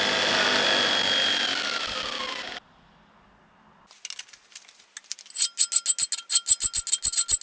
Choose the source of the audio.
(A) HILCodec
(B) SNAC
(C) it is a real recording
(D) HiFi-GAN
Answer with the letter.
C